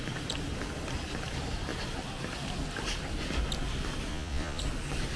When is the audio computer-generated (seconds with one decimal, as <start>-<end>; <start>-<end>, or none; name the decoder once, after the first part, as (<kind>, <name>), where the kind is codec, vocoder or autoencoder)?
4.1-4.6 (vocoder, Vocos)